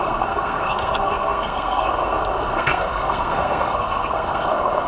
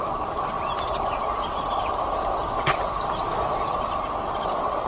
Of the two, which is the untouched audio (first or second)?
second